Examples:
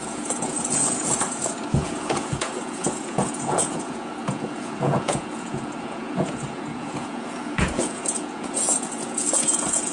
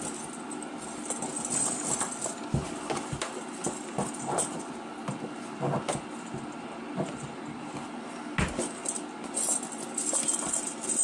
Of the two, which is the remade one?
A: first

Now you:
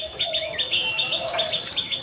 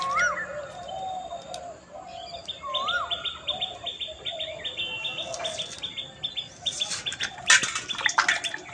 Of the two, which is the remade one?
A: first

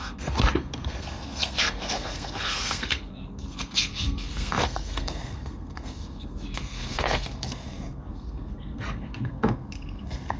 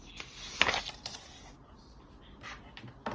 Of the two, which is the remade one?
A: first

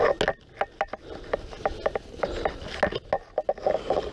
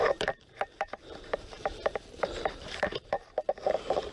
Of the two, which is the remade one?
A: second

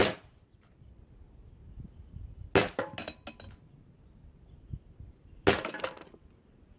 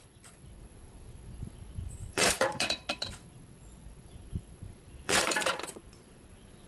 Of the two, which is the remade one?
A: second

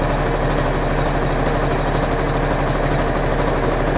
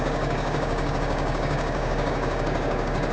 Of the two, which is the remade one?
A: second